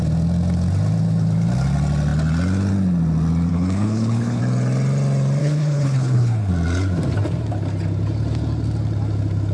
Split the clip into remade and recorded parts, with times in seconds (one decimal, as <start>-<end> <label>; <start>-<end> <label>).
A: 0.0-3.5 recorded; 3.5-4.4 remade; 4.4-5.4 recorded; 5.4-6.5 remade; 6.5-9.5 recorded